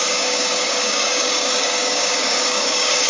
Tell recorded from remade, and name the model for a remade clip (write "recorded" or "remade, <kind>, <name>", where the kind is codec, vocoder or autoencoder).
remade, codec, DAC